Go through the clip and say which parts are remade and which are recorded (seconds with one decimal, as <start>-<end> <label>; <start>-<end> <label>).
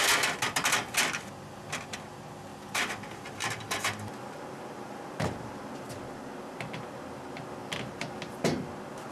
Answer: 0.0-2.5 recorded; 2.5-5.8 remade; 5.8-9.1 recorded